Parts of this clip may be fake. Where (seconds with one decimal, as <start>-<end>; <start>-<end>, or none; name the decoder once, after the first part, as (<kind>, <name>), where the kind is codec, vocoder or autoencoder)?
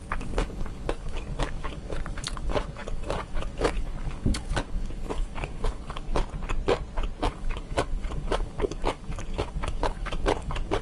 0.0-6.2 (codec, DAC); 7.2-10.8